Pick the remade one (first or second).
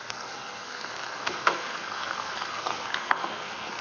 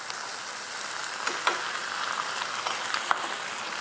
first